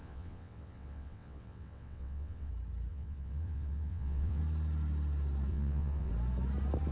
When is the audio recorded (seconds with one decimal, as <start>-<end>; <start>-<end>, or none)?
2.5-2.9; 4.4-5.5; 6.1-6.9